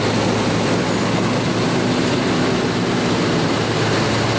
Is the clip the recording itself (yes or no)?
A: yes